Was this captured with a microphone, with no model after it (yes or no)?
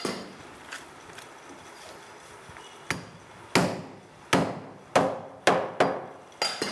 yes